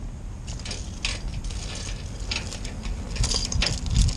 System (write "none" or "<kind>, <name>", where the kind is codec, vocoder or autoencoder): none